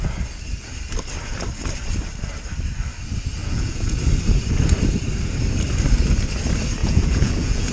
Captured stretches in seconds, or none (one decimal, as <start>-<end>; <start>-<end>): 0.0-3.4; 4.0-6.8